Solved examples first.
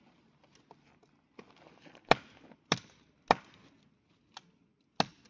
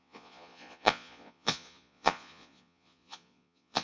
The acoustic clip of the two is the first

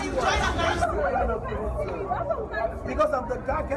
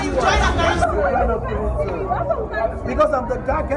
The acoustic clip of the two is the second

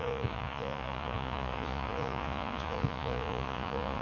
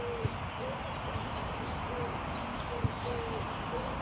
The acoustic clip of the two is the second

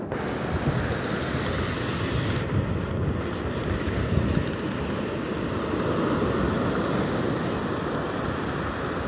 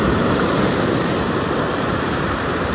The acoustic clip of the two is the first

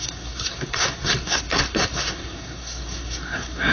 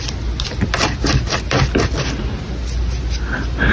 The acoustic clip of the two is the second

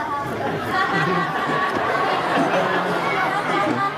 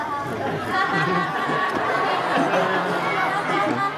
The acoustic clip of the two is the second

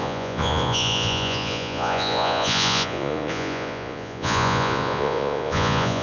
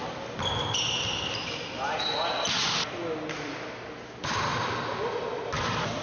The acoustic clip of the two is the second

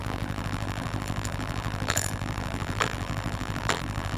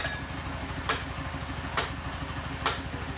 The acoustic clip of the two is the second